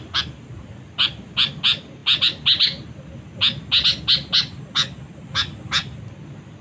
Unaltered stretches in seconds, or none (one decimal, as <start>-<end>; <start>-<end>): 0.0-6.6

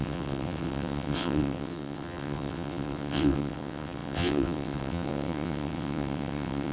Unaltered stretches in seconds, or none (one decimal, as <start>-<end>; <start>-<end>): none

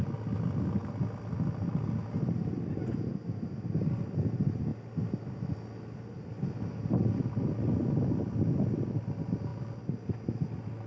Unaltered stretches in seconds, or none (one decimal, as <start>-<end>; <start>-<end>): 0.0-10.9

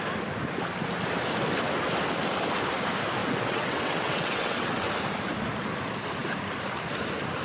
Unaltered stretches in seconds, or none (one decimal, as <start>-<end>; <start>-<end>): 0.0-3.2; 4.9-7.4

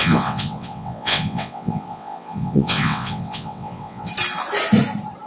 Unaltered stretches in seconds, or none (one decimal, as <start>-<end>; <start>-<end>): 4.1-5.3

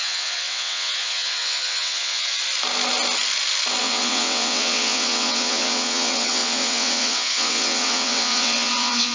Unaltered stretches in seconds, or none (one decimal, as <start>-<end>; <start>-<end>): 2.4-3.8

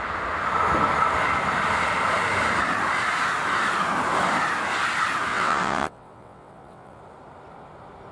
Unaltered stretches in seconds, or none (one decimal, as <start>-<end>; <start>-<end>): 0.0-5.3; 7.0-8.1

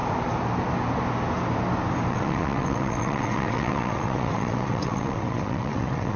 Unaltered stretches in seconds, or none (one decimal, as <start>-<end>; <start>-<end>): 0.0-2.1